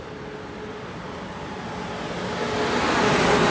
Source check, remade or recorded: recorded